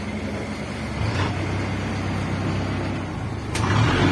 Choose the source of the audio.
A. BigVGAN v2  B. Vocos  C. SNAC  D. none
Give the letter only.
D